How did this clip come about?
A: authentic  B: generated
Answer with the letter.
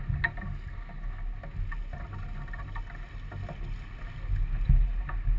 A